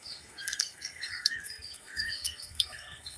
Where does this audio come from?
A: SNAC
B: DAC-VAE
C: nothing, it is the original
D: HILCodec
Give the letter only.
A